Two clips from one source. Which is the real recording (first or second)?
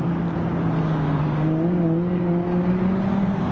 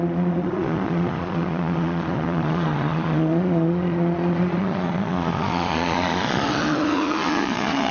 first